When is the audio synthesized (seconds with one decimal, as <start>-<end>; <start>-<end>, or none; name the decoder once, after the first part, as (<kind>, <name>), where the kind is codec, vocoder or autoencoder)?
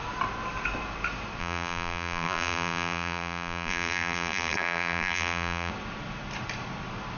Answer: 1.4-5.7 (vocoder, BigVGAN v2)